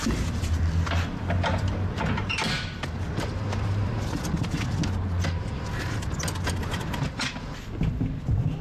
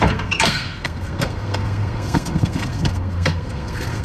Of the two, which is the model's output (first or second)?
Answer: second